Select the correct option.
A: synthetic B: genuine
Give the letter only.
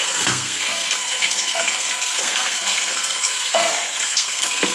A